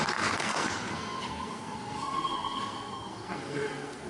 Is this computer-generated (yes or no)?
yes